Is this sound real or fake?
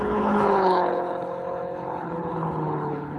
fake